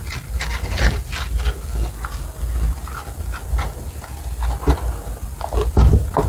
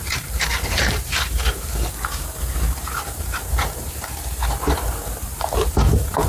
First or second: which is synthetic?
second